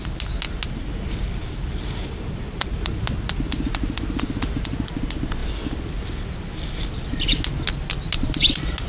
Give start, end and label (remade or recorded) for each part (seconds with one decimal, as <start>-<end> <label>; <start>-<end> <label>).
0.0-1.4 recorded; 1.4-2.9 remade; 2.9-8.9 recorded